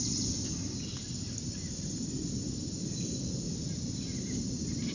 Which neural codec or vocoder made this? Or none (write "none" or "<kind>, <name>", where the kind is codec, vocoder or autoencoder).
none